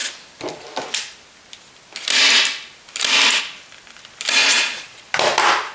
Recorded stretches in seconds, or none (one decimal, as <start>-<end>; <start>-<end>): 0.0-4.4; 5.1-5.7